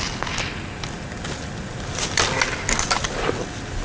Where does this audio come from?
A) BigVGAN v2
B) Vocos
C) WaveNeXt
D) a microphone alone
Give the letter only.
D